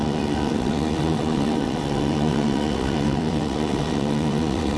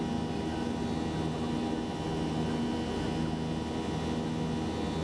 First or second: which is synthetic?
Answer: first